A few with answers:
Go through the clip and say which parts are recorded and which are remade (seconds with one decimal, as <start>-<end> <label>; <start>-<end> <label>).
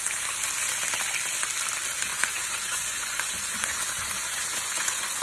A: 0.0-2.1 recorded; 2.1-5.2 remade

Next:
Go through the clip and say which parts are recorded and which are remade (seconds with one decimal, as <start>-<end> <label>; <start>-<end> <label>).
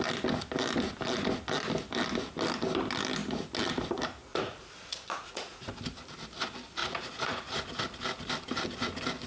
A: 0.0-4.3 recorded; 4.3-5.7 remade; 5.7-6.8 recorded; 6.8-7.7 remade; 7.7-9.3 recorded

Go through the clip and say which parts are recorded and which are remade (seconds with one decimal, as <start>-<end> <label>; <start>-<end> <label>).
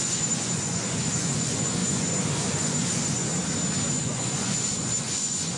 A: 0.0-3.3 remade; 3.3-3.9 recorded; 3.9-5.6 remade